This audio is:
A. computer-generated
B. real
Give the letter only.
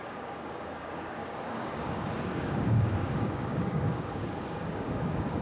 A